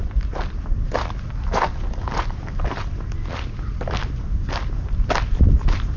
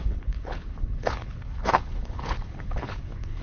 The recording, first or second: first